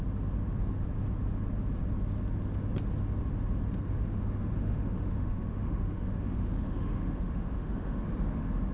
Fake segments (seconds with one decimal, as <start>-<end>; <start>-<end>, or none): 4.1-8.0